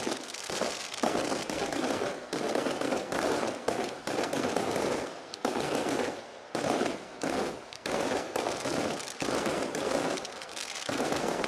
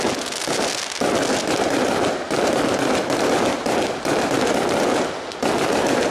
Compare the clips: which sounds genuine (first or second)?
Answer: second